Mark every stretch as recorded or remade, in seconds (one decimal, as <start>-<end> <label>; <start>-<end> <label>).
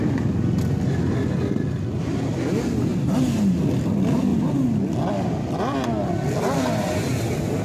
0.0-2.9 recorded; 2.9-3.6 remade; 3.6-7.6 recorded